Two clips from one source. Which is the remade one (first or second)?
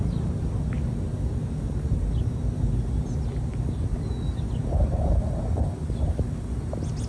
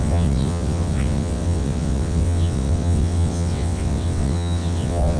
second